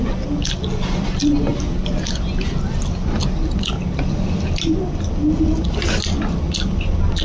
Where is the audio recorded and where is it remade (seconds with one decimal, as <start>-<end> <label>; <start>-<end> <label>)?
0.0-7.2 recorded